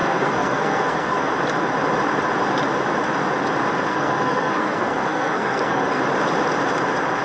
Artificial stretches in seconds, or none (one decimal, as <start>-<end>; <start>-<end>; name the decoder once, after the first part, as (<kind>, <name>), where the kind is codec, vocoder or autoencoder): 0.0-1.3 (codec, SNAC); 3.9-6.0